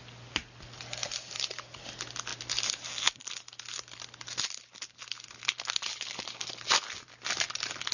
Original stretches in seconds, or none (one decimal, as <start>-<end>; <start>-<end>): 0.0-7.9